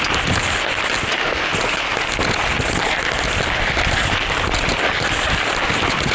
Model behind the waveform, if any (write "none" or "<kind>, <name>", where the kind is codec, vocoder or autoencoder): none